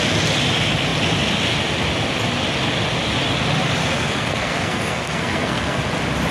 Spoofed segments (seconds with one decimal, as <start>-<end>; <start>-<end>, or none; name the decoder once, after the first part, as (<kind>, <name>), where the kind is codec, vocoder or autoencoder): 3.8-5.8 (codec, SNAC)